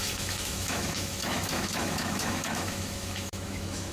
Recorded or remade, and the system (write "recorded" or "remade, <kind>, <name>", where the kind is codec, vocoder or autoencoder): remade, autoencoder, DAC-VAE